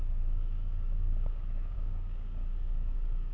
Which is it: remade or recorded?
remade